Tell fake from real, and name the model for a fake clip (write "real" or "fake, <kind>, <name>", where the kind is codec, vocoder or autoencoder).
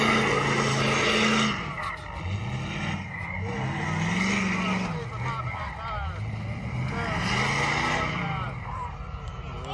real